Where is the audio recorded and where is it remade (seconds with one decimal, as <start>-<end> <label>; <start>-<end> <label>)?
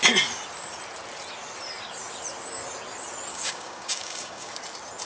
0.0-3.3 recorded; 3.3-4.5 remade; 4.5-5.1 recorded